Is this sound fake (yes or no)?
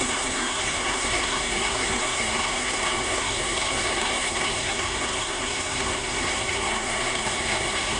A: yes